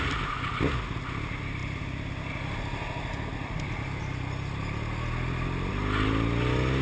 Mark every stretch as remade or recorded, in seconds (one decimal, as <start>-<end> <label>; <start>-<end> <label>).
0.0-6.8 recorded